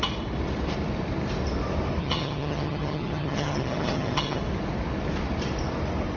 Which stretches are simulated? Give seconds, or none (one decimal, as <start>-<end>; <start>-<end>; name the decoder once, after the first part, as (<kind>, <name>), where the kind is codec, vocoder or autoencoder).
2.0-4.4 (vocoder, HiFi-GAN)